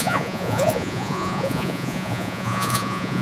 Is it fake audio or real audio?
fake